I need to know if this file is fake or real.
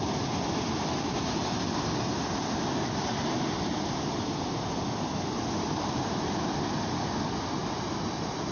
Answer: real